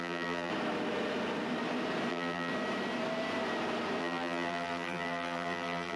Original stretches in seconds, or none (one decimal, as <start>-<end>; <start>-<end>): 0.5-2.1; 2.5-4.0